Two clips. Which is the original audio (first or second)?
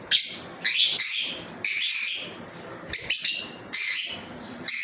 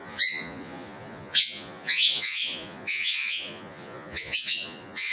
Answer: first